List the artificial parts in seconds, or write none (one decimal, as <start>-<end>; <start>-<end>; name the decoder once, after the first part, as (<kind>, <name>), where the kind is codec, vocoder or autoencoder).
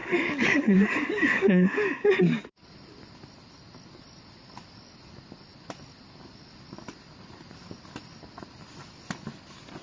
0.0-2.2 (codec, DAC)